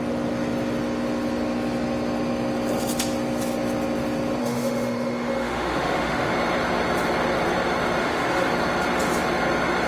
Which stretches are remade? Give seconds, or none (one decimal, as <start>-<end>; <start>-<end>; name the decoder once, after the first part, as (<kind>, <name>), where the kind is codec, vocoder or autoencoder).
4.4-6.3 (autoencoder, DAC-VAE); 8.0-8.5